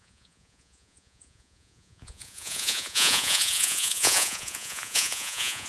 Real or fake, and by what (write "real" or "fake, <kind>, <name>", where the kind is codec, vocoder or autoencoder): fake, vocoder, Vocos